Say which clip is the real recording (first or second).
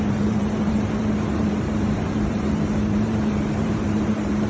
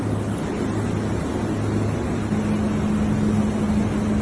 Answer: second